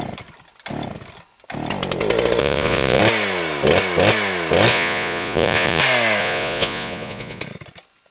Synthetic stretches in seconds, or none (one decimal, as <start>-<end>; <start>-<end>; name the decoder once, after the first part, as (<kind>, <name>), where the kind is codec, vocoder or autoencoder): 2.4-3.0 (vocoder, Vocos); 4.7-5.8; 6.2-7.4